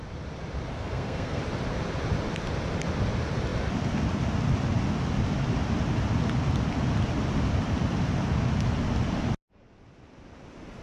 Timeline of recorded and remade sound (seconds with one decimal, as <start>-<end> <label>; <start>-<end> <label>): 0.0-0.7 recorded; 0.7-1.4 remade; 1.4-10.8 recorded